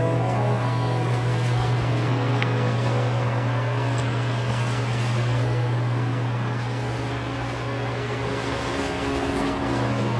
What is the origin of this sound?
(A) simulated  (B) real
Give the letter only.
A